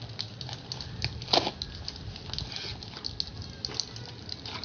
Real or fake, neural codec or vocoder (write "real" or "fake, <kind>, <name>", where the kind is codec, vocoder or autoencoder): real